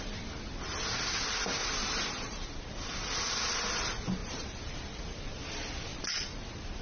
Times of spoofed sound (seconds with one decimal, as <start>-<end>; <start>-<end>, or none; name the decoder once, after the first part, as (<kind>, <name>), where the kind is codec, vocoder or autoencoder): 1.6-2.6 (vocoder, BigVGAN v2); 4.2-5.3; 5.9-6.8